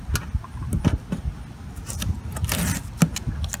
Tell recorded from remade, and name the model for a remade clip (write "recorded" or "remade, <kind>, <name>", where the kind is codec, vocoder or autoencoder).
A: recorded